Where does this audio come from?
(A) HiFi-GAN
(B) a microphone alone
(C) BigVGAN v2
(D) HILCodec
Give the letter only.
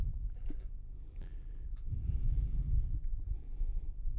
C